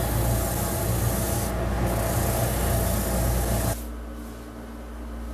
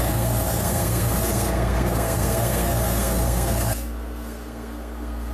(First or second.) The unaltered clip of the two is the first